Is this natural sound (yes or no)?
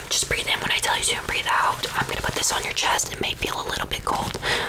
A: yes